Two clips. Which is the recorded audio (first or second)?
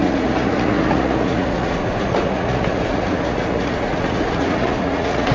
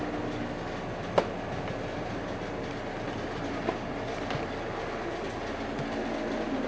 second